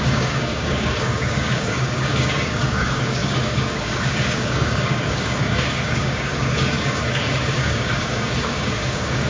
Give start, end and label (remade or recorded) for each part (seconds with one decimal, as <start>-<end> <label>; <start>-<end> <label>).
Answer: 0.0-9.3 remade